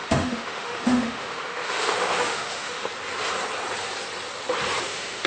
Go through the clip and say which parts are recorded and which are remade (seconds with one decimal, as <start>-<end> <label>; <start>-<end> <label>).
0.0-2.8 remade; 2.8-4.8 recorded; 4.8-5.3 remade